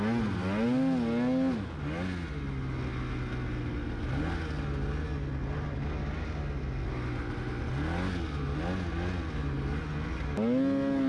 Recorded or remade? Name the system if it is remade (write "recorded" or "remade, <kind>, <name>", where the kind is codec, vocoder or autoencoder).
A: recorded